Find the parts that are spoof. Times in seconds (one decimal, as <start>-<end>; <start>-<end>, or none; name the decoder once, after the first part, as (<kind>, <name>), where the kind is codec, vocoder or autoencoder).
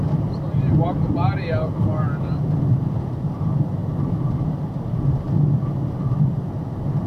none